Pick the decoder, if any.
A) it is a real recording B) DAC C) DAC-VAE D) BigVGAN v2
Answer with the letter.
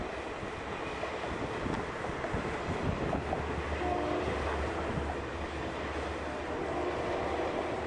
D